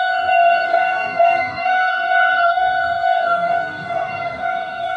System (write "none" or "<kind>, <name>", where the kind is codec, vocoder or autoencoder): codec, DAC